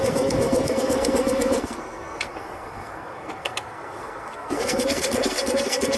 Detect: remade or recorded remade